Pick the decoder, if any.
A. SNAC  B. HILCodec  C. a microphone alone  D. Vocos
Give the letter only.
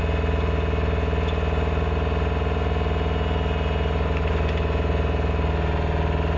C